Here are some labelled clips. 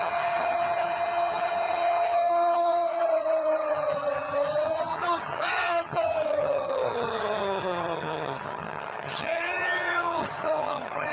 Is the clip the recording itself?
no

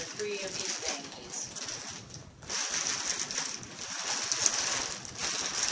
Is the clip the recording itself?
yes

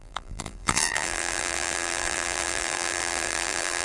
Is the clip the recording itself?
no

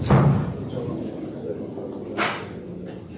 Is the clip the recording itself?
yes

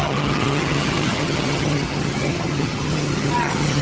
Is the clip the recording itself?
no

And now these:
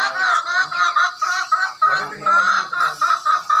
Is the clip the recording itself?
yes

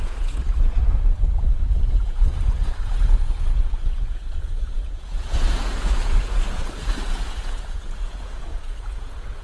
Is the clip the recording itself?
no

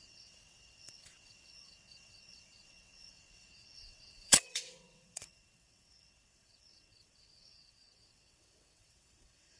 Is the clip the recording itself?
no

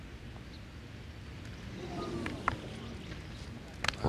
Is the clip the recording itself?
yes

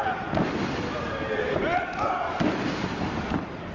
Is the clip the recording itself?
yes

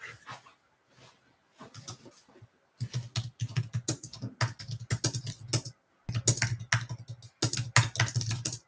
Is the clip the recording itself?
yes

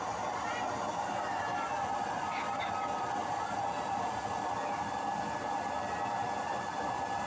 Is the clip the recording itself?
yes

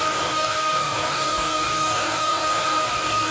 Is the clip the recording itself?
no